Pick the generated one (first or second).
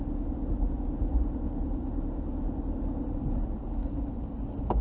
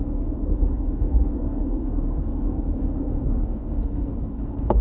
second